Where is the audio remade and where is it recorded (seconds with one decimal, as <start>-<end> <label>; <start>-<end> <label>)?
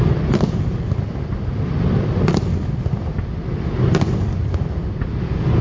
0.0-5.6 recorded